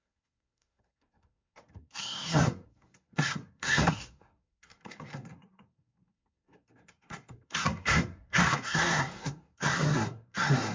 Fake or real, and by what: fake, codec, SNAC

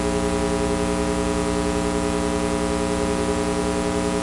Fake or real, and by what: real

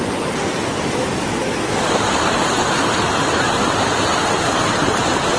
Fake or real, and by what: real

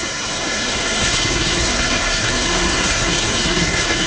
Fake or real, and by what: fake, codec, SNAC